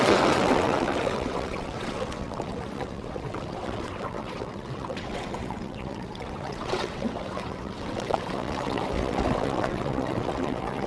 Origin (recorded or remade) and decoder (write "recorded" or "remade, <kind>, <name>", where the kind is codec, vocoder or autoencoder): remade, vocoder, WaveNeXt